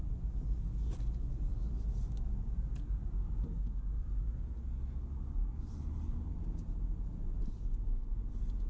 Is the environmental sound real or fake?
real